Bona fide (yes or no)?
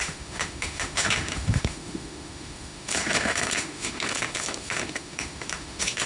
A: no